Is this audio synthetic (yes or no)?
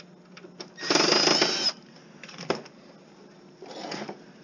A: no